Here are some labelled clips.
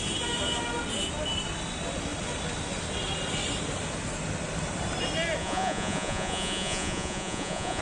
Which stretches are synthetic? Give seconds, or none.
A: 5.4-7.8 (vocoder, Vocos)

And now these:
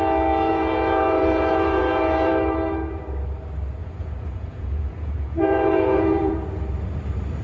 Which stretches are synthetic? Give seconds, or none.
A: 0.5-2.3 (vocoder, Vocos); 3.8-6.3